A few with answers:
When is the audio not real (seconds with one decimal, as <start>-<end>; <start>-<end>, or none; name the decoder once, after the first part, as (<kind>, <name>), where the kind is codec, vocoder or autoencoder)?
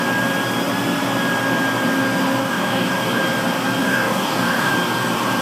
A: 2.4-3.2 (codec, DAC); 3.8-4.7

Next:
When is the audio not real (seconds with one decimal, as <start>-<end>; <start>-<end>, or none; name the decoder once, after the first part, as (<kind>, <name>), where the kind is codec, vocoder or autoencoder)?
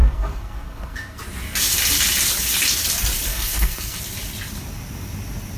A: 0.0-1.2 (codec, SNAC); 3.3-4.0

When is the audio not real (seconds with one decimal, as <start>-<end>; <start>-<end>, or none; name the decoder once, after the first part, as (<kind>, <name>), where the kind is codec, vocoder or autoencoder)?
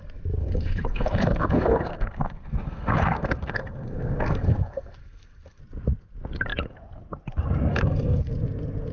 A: 0.4-5.6 (codec, SNAC); 7.7-8.3